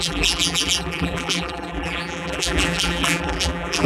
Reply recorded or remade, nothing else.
remade